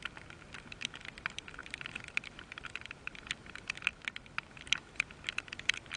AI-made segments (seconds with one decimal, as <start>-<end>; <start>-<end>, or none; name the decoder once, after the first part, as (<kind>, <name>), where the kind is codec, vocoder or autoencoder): none